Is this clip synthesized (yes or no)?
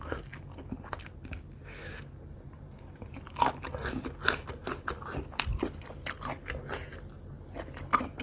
no